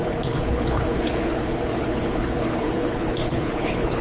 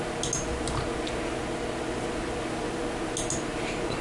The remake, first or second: first